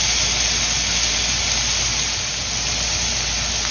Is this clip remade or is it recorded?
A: recorded